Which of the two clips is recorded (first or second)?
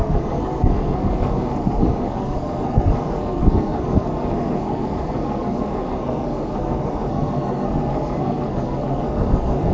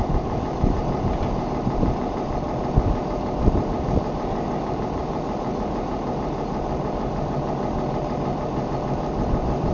second